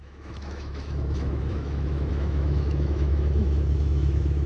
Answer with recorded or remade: remade